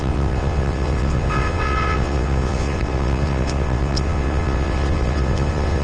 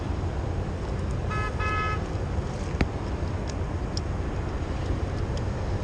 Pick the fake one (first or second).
first